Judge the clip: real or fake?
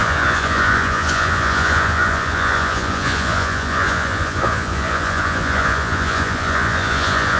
fake